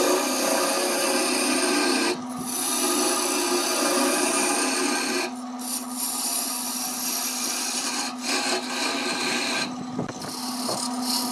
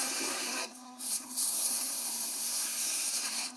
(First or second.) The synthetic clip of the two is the second